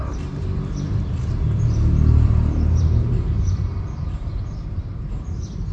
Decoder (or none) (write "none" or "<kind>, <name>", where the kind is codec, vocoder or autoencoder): vocoder, BigVGAN v2